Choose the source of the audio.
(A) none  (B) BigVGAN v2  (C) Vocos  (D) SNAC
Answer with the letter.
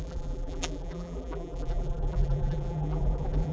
B